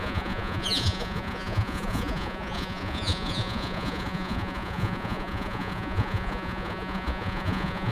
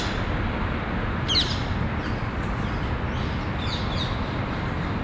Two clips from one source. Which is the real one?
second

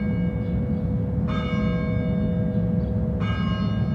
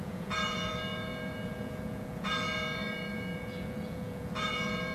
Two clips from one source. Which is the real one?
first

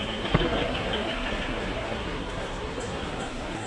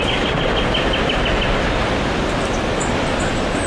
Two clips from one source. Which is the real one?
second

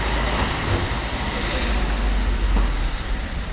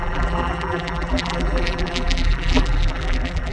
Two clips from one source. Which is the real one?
first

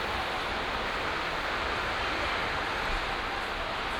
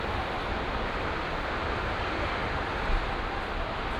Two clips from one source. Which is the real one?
first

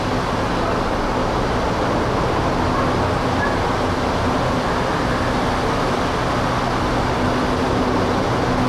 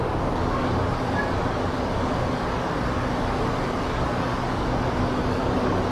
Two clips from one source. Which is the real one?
first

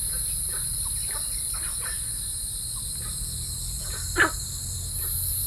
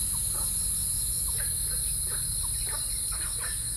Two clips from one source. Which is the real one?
second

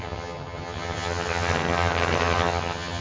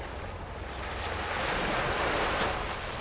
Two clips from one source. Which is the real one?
second